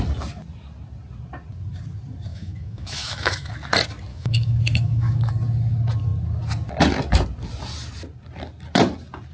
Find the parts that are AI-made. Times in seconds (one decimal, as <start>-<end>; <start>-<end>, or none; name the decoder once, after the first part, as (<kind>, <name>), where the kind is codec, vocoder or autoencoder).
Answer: 2.3-3.5 (autoencoder, DAC-VAE); 4.1-5.3